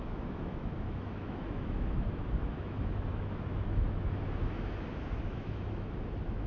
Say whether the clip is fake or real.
fake